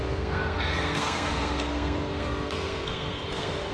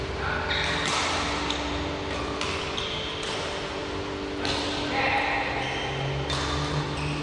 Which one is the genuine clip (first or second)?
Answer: second